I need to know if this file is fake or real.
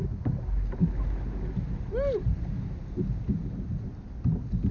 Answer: real